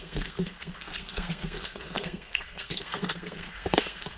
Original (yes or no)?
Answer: no